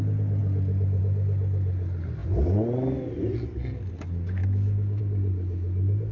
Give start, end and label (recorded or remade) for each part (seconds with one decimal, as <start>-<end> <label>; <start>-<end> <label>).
0.0-4.4 recorded; 4.4-5.0 remade; 5.0-6.1 recorded